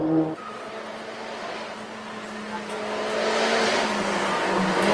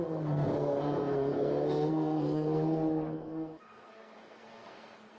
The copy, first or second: second